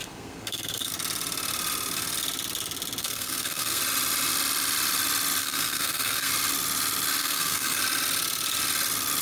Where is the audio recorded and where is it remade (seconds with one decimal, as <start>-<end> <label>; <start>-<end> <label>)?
0.0-0.9 remade; 0.9-3.0 recorded; 3.0-3.8 remade; 3.8-5.4 recorded; 5.4-6.3 remade; 6.3-7.2 recorded; 7.2-7.8 remade; 7.8-9.2 recorded